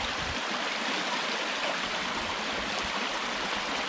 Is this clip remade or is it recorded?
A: recorded